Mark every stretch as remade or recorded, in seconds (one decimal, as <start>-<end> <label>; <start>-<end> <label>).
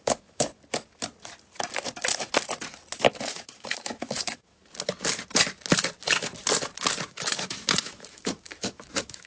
0.0-0.5 remade; 0.5-3.0 recorded; 3.0-4.6 remade; 4.6-7.1 recorded; 7.1-9.3 remade